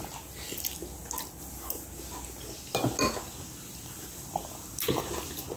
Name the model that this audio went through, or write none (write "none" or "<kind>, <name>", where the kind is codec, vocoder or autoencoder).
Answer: none